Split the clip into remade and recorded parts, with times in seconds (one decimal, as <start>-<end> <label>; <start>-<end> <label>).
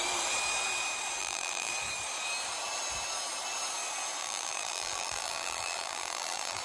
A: 0.0-1.2 recorded; 1.2-1.7 remade; 1.7-4.2 recorded; 4.2-6.6 remade